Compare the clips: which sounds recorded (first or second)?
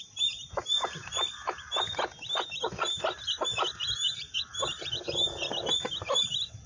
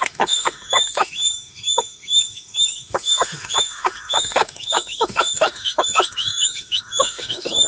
first